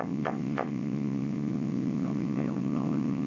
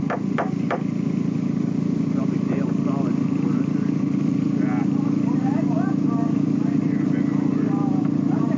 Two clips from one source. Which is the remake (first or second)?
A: first